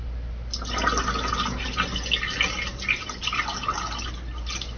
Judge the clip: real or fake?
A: real